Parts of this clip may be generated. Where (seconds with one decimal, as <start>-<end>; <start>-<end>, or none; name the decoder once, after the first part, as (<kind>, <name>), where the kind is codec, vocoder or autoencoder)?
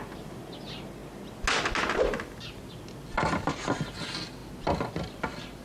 none